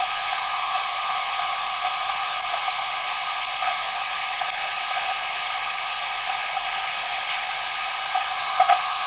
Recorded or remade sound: remade